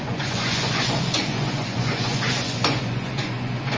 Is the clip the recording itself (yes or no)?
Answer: no